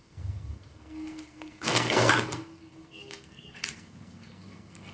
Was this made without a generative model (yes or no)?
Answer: no